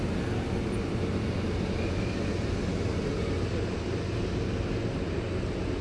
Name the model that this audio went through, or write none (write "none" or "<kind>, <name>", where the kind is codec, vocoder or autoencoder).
none